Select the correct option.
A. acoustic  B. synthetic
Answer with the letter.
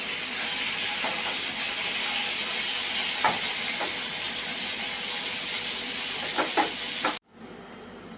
A